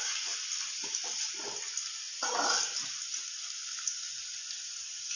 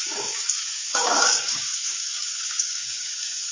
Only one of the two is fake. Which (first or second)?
second